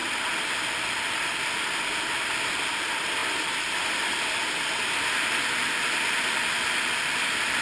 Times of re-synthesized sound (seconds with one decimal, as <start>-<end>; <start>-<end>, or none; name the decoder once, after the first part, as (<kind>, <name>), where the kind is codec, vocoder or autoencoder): none